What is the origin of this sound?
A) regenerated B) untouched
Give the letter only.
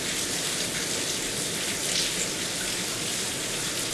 B